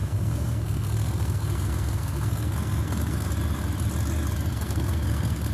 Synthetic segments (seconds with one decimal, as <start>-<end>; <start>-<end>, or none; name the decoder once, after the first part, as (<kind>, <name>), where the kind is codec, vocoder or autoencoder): 0.0-3.3 (codec, SNAC); 4.5-5.5

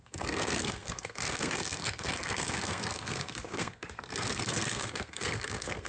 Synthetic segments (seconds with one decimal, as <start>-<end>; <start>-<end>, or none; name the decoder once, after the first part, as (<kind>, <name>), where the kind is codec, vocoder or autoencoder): 0.0-5.9 (codec, SNAC)